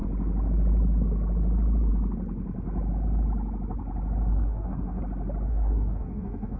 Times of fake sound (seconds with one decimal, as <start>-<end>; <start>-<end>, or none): 4.3-5.0; 5.5-6.6